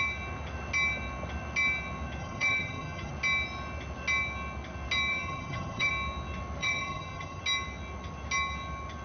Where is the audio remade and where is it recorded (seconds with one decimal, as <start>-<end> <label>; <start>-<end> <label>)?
0.0-2.2 recorded; 2.2-3.1 remade; 3.1-5.1 recorded; 5.1-5.9 remade; 5.9-6.6 recorded; 6.6-7.4 remade; 7.4-9.0 recorded